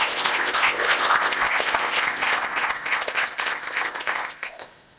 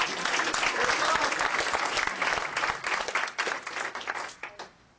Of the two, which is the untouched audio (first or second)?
second